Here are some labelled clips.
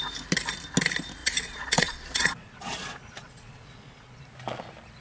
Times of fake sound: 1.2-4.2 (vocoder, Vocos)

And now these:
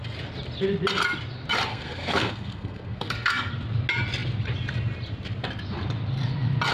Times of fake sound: 1.7-3.5 (codec, SNAC)

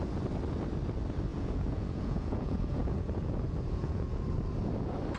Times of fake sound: 1.3-4.2 (vocoder, Vocos)